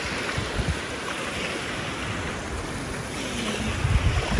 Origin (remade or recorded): recorded